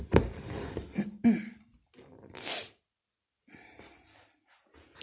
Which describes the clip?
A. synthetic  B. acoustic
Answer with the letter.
B